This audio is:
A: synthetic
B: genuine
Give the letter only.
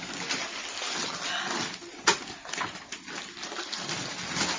B